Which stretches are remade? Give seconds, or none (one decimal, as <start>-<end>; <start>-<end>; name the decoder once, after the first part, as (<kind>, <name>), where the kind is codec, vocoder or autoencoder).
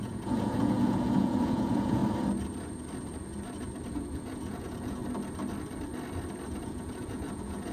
0.0-2.0 (vocoder, Vocos); 3.9-5.0; 6.5-7.7